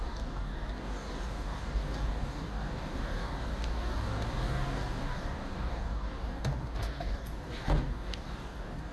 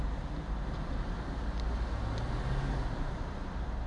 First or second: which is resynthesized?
first